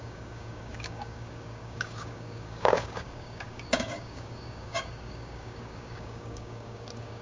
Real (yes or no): no